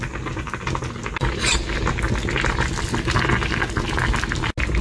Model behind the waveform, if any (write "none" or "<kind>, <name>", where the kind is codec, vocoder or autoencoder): none